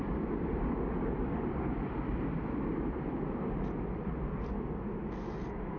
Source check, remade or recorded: recorded